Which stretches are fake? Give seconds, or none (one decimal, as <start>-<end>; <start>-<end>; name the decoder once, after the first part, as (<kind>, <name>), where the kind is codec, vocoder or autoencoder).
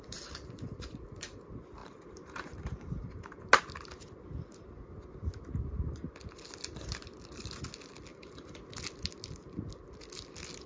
1.8-3.2 (vocoder, BigVGAN v2); 8.1-8.6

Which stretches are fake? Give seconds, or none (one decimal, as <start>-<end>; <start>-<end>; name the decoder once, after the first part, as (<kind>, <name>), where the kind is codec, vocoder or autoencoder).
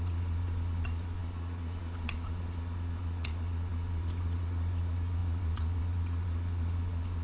0.0-7.2 (vocoder, Vocos)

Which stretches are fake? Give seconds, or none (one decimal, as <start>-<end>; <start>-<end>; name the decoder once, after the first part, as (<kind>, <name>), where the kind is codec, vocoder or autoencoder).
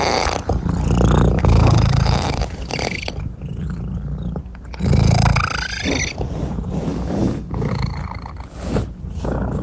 6.9-7.7 (codec, DAC)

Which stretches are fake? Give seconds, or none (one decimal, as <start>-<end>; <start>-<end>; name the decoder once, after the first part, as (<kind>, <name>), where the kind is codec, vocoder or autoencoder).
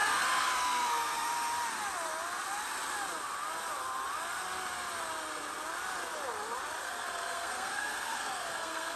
0.0-1.3 (codec, SNAC); 6.8-9.0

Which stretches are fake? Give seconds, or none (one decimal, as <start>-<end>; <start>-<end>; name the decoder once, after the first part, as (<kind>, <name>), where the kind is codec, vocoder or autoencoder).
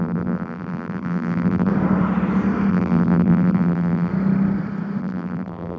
0.0-1.7 (vocoder, BigVGAN v2); 2.7-4.1; 5.0-5.8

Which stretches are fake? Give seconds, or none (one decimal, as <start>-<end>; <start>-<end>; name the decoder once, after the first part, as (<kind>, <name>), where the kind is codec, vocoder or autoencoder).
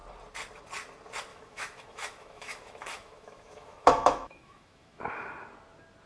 1.3-5.0 (autoencoder, DAC-VAE)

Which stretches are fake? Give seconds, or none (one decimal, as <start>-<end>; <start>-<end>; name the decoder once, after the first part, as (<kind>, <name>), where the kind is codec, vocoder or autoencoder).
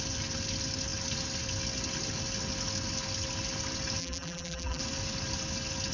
4.0-4.8 (vocoder, BigVGAN v2)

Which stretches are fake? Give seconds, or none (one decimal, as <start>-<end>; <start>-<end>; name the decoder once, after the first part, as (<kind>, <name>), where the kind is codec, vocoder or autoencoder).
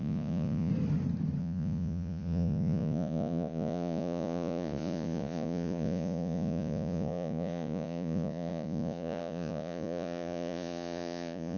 0.0-0.7 (vocoder, Vocos); 1.4-11.6